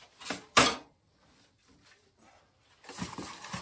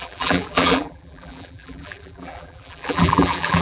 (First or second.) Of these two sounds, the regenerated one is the second